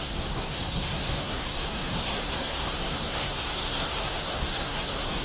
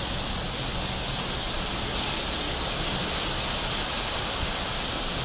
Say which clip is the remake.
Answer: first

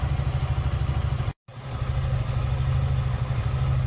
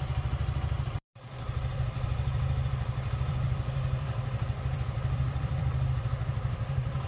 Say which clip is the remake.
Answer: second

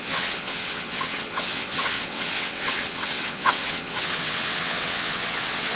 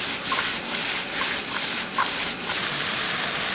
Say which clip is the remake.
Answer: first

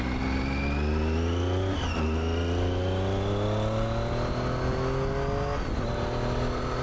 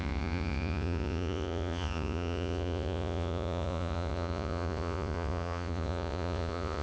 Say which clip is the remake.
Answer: second